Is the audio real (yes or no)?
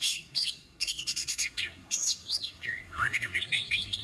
no